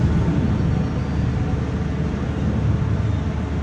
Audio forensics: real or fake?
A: real